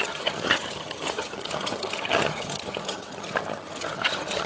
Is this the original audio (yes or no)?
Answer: no